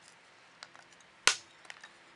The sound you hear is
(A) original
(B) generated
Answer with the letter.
A